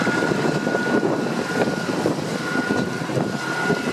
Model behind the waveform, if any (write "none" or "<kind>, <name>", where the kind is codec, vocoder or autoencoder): none